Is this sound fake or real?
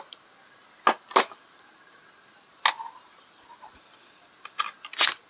real